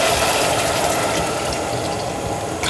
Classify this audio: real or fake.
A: real